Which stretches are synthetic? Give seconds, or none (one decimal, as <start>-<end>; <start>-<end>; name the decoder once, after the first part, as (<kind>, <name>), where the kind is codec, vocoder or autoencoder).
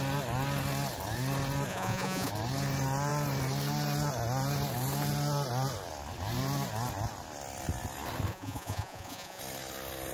1.7-2.3 (vocoder, Vocos); 8.3-9.4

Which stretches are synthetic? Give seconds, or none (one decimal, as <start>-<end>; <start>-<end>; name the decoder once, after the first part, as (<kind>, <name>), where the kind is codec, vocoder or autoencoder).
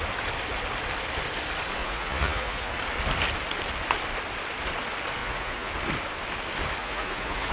1.8-2.7 (vocoder, Vocos); 5.2-5.7; 6.8-7.5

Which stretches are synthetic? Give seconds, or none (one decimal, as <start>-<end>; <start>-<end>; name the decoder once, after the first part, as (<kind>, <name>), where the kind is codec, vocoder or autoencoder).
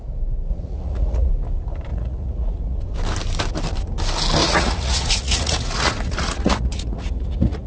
0.5-1.3 (vocoder, Vocos); 1.9-2.8; 4.4-7.7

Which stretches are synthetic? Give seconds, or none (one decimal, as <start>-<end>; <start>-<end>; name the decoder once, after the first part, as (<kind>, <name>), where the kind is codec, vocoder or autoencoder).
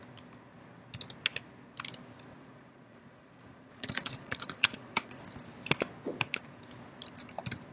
2.3-5.2 (vocoder, Vocos)